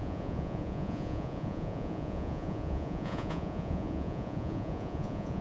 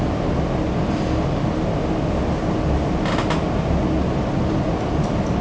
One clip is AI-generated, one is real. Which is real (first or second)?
second